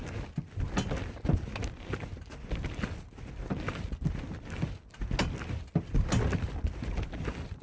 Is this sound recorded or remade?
recorded